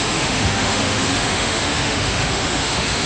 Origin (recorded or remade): remade